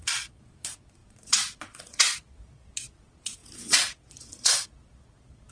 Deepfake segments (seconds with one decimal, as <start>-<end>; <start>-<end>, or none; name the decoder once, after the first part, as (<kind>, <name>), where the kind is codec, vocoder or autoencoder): 0.0-5.5 (vocoder, Vocos)